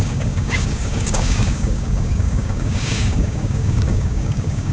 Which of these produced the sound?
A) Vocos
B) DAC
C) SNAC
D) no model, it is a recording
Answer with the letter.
B